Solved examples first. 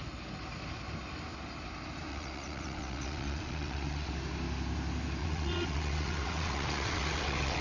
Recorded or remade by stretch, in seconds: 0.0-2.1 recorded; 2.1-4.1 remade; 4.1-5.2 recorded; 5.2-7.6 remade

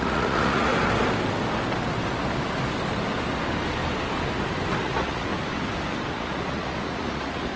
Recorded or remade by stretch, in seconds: 0.0-0.7 remade; 0.7-4.8 recorded; 4.8-5.3 remade; 5.3-6.1 recorded; 6.1-7.6 remade

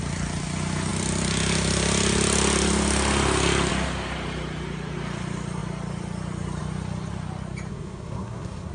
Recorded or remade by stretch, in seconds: 0.0-7.7 recorded; 7.7-8.7 remade

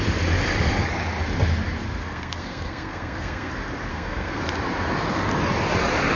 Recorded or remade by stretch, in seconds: 0.0-2.0 recorded; 2.0-3.5 remade; 3.5-3.9 recorded; 3.9-4.4 remade; 4.4-6.2 recorded

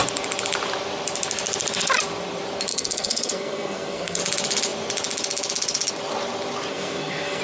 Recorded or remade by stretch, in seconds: 0.0-2.7 recorded; 2.7-4.2 remade; 4.2-6.7 recorded; 6.7-7.4 remade

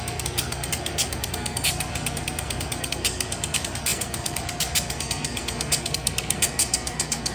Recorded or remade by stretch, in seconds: 0.0-7.3 remade